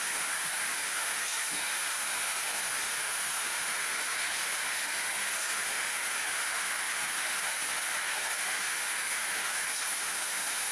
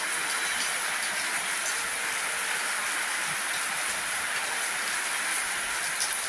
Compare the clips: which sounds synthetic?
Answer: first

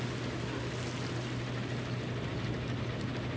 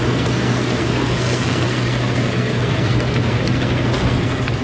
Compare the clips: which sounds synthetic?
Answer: second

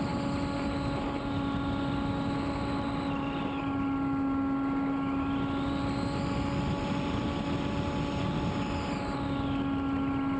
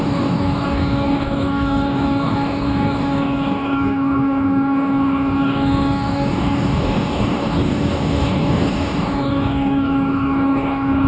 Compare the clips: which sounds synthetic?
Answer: second